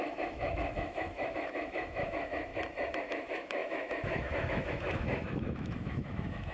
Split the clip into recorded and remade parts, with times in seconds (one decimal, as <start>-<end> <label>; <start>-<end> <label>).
0.0-2.5 remade; 2.5-3.0 recorded; 3.0-6.5 remade